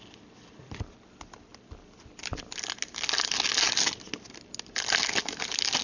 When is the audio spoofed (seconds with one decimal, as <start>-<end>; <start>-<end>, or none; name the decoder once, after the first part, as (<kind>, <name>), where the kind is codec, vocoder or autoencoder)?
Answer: none